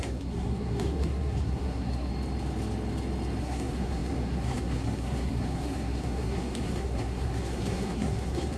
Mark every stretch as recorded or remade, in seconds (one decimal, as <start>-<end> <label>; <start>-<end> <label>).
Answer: 0.0-2.1 remade; 2.1-3.4 recorded; 3.4-8.6 remade